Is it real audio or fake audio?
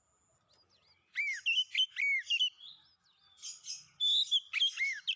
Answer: real